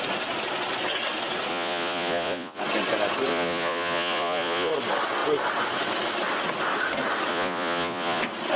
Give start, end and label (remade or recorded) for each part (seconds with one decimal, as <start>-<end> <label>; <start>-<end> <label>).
0.0-1.5 recorded; 1.5-2.6 remade; 2.6-3.3 recorded; 3.3-4.7 remade; 4.7-7.3 recorded; 7.3-8.2 remade; 8.2-8.6 recorded

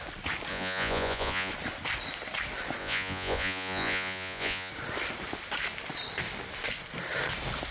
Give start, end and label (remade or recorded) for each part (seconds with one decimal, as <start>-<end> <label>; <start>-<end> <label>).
0.0-0.5 recorded; 0.5-1.5 remade; 1.5-2.8 recorded; 2.8-4.7 remade; 4.7-7.7 recorded

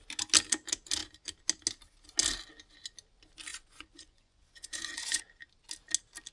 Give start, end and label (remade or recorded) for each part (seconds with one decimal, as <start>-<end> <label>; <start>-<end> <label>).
0.0-3.5 recorded; 3.5-5.2 remade; 5.2-6.3 recorded

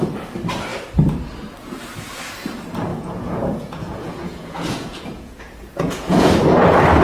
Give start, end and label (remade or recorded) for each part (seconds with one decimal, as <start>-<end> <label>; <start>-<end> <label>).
0.0-2.9 recorded; 2.9-6.3 remade; 6.3-7.0 recorded

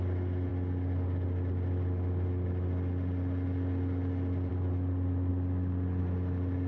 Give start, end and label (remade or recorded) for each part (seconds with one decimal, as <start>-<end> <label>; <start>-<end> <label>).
0.0-6.7 recorded

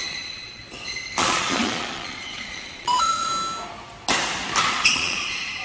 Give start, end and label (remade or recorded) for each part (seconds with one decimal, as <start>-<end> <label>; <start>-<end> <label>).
0.0-0.6 remade; 0.6-1.2 recorded; 1.2-3.3 remade; 3.3-4.6 recorded; 4.6-5.6 remade

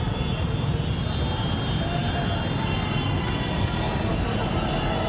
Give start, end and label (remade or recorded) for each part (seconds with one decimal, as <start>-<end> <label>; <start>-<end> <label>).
0.0-5.1 recorded

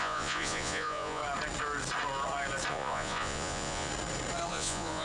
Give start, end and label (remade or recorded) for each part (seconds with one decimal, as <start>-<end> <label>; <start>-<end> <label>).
0.0-1.2 remade; 1.2-2.7 recorded; 2.7-3.9 remade; 3.9-4.5 recorded; 4.5-5.0 remade